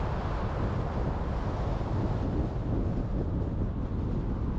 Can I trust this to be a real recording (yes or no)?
yes